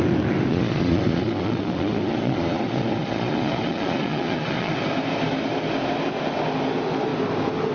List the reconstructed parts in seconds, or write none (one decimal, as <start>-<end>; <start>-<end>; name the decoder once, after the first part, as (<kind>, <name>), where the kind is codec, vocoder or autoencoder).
0.5-4.7 (vocoder, Vocos)